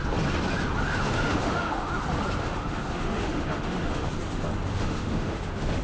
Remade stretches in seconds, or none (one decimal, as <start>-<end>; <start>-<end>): 0.9-1.9; 2.4-4.1; 4.7-5.8